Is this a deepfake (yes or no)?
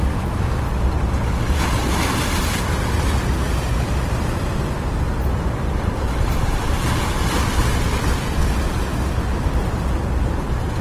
no